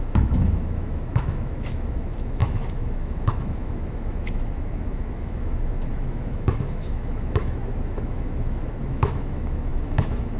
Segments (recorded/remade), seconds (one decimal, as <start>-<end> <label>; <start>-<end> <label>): 0.0-10.4 remade